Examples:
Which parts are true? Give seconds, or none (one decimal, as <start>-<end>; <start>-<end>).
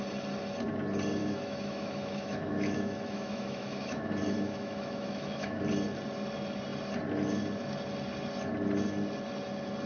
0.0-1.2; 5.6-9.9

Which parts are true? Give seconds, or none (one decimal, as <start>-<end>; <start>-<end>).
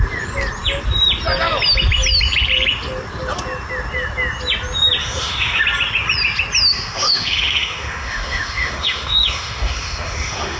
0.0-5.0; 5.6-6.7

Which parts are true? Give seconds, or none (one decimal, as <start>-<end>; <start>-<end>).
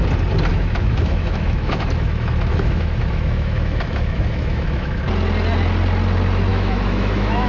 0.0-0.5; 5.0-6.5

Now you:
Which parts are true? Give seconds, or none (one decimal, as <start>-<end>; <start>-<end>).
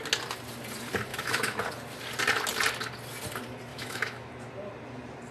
0.0-1.1; 1.6-3.7; 4.3-5.3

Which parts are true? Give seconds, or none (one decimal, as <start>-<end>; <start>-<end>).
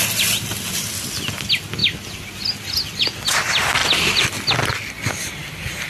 0.0-5.9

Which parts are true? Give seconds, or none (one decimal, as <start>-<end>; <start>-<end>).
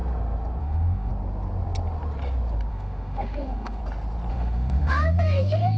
0.0-0.6; 1.1-2.7; 3.8-4.3